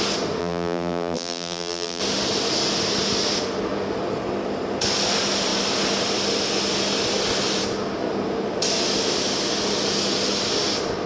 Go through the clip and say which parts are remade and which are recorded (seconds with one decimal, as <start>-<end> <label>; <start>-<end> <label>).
0.0-0.4 recorded; 0.4-2.0 remade; 2.0-11.1 recorded